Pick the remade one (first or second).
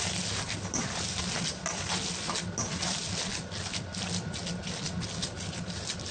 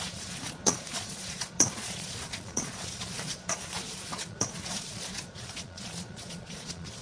second